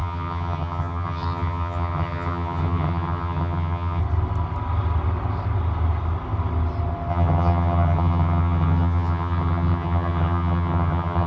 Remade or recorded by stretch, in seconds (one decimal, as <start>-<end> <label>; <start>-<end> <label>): 0.0-4.0 remade; 4.0-7.1 recorded; 7.1-11.3 remade